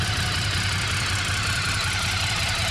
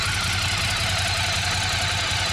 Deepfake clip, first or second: first